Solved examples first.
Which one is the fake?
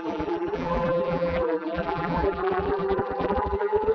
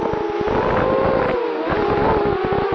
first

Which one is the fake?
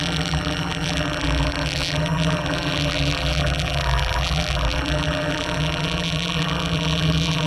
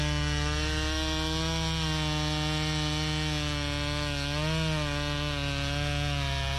first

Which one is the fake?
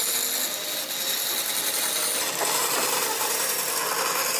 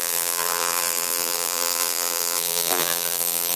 second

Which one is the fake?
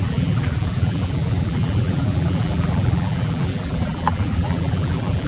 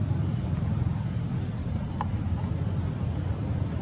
first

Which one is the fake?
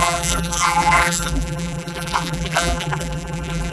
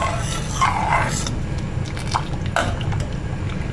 first